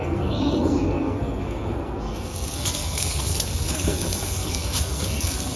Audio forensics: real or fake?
fake